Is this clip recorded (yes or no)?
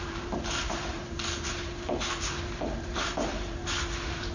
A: no